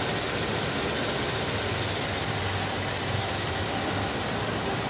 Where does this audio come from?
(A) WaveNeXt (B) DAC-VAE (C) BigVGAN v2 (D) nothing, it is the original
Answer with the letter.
D